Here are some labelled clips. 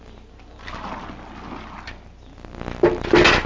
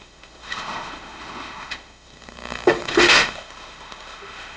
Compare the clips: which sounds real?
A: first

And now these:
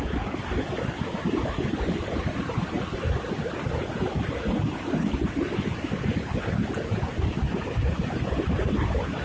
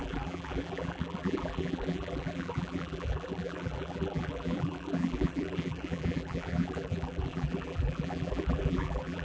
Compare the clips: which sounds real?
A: first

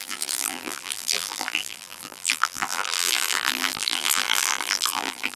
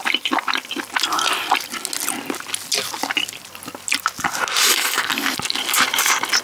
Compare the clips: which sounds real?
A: second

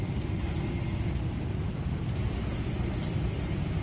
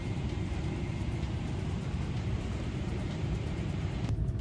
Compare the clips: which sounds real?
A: first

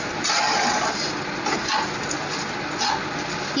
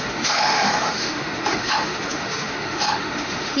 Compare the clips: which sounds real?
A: first